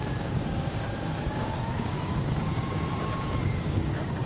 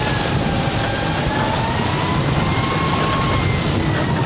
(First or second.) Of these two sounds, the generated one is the first